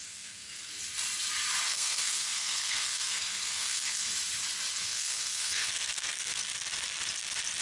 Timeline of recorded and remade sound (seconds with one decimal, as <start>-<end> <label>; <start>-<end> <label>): 0.0-0.7 remade; 0.7-1.7 recorded; 1.7-4.1 remade; 4.1-4.7 recorded; 4.7-6.4 remade; 6.4-7.6 recorded